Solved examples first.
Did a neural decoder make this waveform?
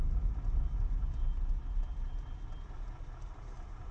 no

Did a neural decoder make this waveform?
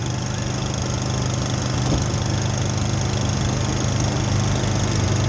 no